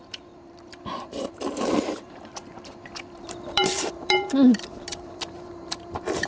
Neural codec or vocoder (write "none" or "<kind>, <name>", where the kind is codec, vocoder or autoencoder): vocoder, BigVGAN v2